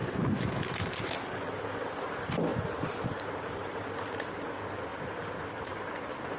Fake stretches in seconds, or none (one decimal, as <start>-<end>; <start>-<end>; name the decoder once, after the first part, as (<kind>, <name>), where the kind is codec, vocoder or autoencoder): 0.0-1.0 (vocoder, BigVGAN v2); 2.5-3.4